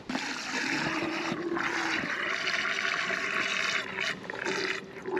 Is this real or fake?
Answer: real